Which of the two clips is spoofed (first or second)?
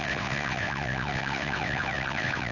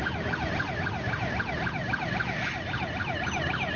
first